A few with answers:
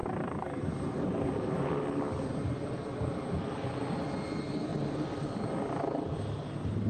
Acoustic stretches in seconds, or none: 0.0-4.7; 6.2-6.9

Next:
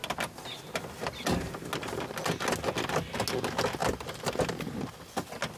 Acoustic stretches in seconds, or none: 0.0-5.6

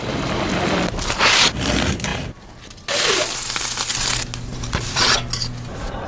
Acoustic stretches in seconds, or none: 0.0-4.5; 5.0-6.1